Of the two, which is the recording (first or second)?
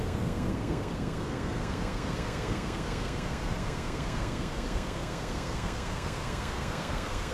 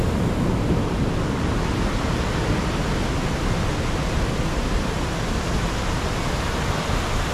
second